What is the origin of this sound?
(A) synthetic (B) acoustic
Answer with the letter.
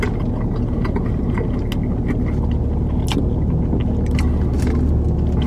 B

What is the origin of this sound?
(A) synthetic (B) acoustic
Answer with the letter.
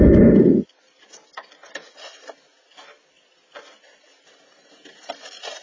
B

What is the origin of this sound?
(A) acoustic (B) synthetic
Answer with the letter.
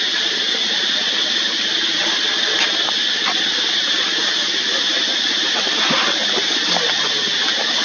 A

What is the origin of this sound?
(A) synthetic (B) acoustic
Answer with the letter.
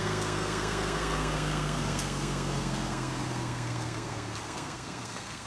A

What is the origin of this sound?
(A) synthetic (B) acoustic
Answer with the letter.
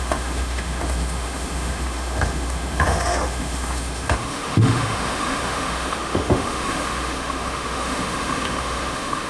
A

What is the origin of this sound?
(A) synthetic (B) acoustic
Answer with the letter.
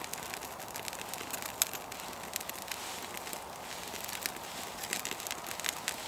B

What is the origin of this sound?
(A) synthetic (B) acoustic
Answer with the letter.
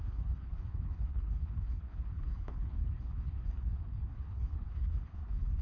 A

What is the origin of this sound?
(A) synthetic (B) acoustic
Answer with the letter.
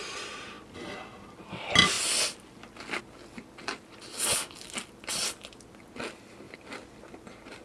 B